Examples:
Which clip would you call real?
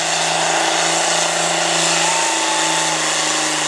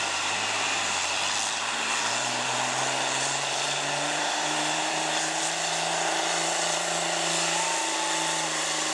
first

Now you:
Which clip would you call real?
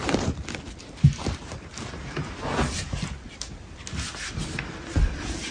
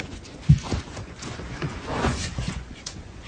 first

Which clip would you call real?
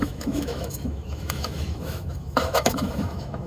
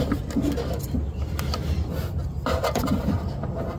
second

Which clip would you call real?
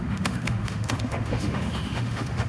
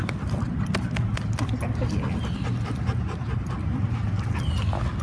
second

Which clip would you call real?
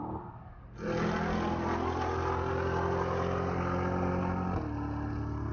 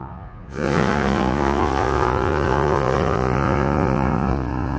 first